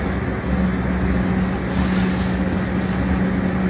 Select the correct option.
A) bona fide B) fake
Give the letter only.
A